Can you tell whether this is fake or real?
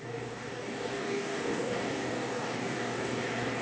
fake